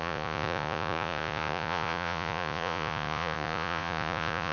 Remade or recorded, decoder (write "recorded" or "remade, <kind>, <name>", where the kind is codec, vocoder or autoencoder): remade, vocoder, Vocos